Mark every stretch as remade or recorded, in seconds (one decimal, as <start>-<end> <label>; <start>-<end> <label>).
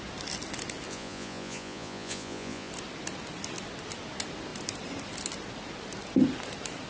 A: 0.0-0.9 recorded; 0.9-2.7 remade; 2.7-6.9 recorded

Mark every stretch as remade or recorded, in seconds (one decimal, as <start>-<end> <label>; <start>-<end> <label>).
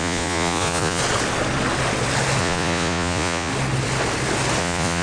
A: 0.0-1.0 remade; 1.0-2.4 recorded; 2.4-3.5 remade; 3.5-4.6 recorded; 4.6-5.0 remade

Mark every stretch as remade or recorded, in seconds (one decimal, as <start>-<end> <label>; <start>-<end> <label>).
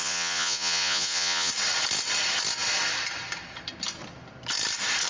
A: 0.0-1.5 remade; 1.5-5.1 recorded